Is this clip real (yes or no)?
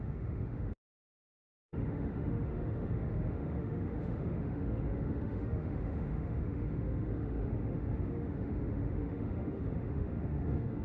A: no